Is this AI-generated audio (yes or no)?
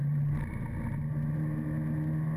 no